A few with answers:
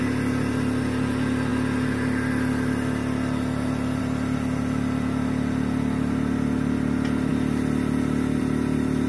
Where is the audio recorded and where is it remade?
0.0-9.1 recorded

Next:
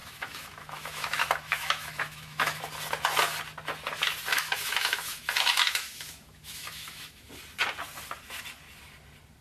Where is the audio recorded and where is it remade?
0.0-2.6 remade; 2.6-4.3 recorded; 4.3-7.3 remade; 7.3-9.4 recorded